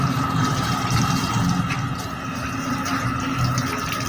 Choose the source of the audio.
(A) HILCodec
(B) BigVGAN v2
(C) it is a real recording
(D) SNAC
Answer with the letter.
C